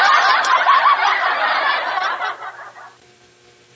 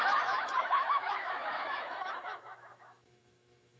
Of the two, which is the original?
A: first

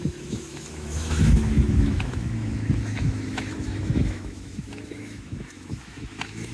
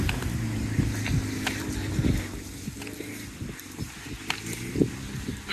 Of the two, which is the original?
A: second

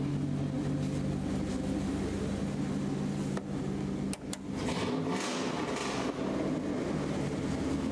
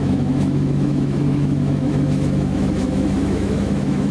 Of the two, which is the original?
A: first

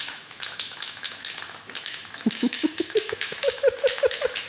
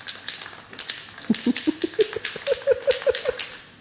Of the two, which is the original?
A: second